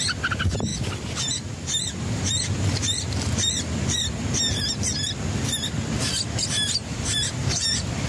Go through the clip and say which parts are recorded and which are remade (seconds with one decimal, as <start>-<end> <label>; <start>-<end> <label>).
0.0-0.7 recorded; 0.7-4.0 remade; 4.0-6.8 recorded; 6.8-8.1 remade